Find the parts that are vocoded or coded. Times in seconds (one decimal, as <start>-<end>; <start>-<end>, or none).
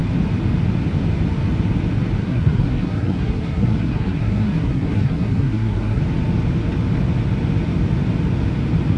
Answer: 2.2-6.0